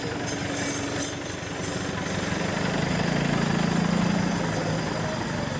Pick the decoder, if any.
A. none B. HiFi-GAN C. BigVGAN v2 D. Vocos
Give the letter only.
A